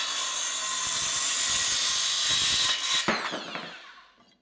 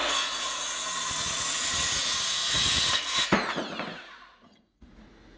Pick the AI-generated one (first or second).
second